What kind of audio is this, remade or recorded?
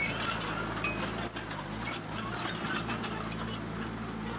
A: recorded